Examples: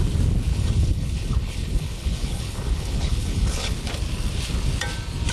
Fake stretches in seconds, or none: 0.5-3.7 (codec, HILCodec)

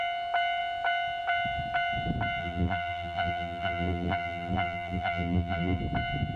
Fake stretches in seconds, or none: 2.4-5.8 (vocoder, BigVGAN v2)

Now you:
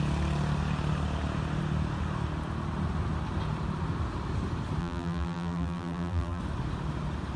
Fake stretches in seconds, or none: 4.8-6.4 (vocoder, BigVGAN v2)

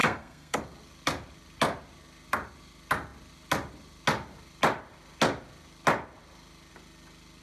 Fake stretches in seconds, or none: 0.0-0.6 (codec, SNAC)

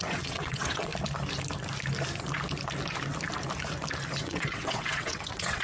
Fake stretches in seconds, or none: 0.0-0.9 (vocoder, WaveNeXt); 4.2-5.6